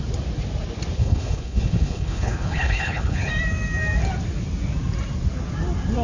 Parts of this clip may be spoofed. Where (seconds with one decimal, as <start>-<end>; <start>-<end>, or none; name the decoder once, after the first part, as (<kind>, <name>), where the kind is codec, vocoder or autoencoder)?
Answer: 1.0-3.3 (codec, HILCodec)